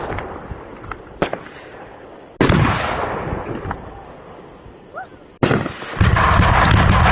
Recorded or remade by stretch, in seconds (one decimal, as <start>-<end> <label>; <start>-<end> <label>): 0.0-7.1 recorded